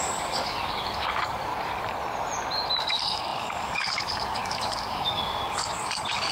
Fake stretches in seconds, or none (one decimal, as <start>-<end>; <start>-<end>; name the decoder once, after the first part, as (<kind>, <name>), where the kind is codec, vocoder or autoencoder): 0.0-1.5 (codec, DAC); 2.8-6.3